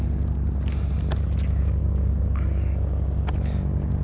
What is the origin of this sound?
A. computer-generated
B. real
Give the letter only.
B